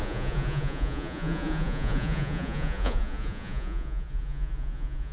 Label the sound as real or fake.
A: fake